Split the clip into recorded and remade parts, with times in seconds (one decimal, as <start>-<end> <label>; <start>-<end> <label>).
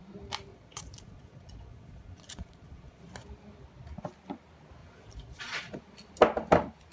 0.0-0.5 recorded; 0.5-3.1 remade; 3.1-4.8 recorded; 4.8-5.8 remade; 5.8-6.9 recorded